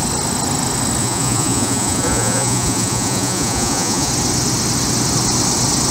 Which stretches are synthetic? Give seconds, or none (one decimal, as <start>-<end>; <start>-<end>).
1.0-4.1